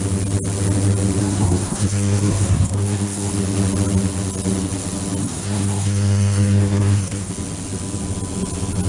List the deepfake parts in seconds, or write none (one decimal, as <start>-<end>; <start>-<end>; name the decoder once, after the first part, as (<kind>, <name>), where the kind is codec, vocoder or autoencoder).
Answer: 1.2-3.3 (codec, SNAC); 5.2-7.3

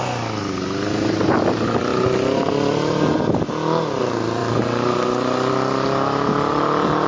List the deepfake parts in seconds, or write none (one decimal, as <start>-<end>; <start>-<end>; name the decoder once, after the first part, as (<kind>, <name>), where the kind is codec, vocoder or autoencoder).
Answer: none

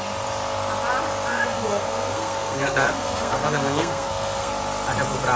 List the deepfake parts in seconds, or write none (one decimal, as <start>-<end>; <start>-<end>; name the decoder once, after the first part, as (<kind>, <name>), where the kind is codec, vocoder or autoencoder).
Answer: 1.3-4.5 (codec, SNAC)